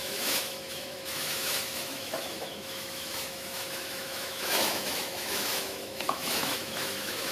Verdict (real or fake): fake